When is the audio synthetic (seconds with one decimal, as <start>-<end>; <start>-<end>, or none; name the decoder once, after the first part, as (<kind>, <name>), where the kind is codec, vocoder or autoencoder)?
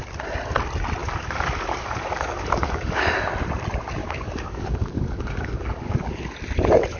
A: 1.0-3.2 (codec, DAC); 4.0-6.1